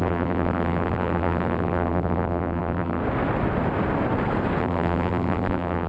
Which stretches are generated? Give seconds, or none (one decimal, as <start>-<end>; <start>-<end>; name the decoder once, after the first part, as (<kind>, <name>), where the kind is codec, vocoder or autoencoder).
0.0-3.0 (vocoder, BigVGAN v2); 4.6-5.9